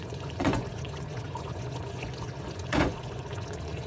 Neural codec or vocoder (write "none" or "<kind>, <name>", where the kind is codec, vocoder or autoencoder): vocoder, Vocos